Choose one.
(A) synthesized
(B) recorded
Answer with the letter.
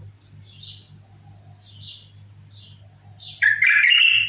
B